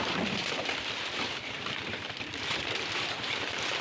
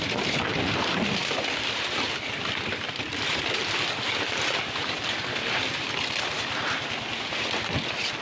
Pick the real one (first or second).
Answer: second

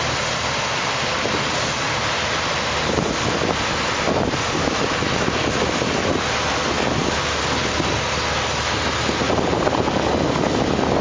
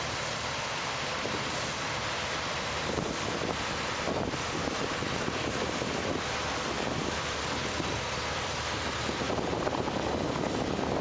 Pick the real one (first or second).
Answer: first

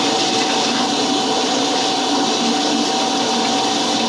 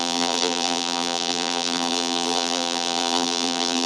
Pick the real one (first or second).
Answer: first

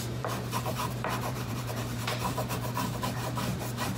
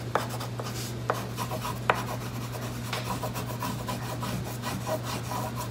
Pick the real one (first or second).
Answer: second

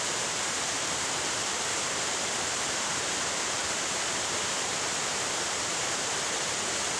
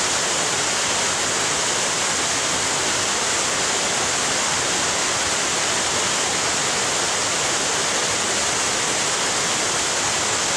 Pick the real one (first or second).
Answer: second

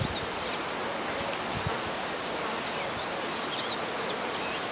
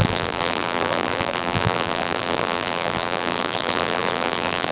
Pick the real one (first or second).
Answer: first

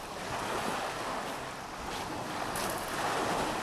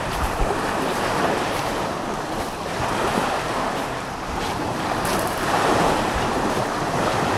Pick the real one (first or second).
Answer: first